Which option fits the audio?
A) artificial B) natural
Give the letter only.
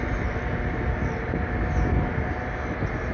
B